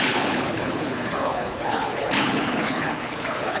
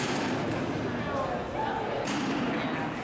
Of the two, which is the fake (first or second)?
first